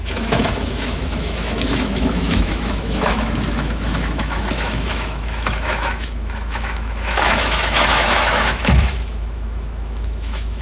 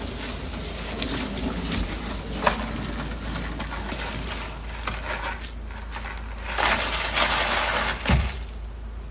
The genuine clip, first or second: second